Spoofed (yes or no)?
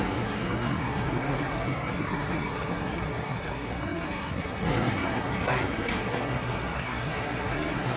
yes